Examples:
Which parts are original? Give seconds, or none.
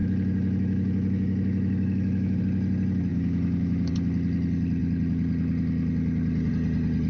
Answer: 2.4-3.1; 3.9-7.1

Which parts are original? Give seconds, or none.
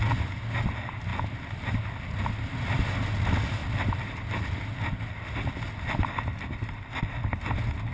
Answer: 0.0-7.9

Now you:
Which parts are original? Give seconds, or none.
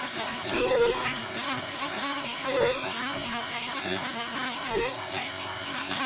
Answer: none